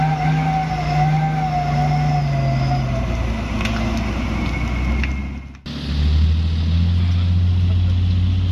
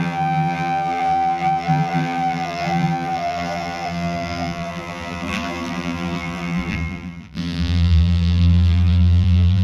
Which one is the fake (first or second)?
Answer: second